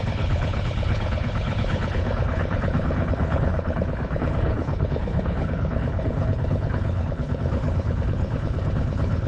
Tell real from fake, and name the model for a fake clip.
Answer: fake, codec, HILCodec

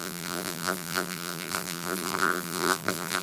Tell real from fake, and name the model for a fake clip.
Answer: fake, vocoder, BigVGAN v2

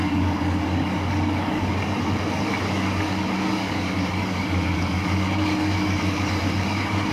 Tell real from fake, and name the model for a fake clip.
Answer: fake, codec, DAC